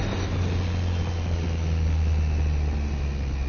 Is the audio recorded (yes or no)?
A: yes